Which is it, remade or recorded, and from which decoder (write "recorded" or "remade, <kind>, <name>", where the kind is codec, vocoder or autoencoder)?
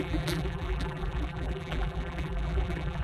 remade, vocoder, BigVGAN v2